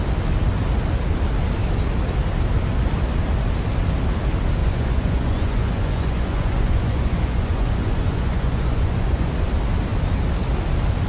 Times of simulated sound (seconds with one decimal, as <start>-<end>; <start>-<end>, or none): 4.6-9.3